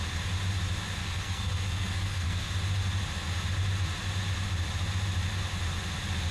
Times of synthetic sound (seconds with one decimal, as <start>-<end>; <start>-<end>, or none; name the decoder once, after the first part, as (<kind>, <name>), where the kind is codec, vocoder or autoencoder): 1.0-2.5 (codec, SNAC)